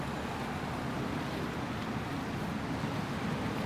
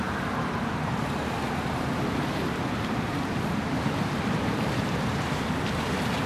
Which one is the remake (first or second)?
second